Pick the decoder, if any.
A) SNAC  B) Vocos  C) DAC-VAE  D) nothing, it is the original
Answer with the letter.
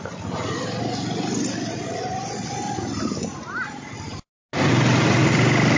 D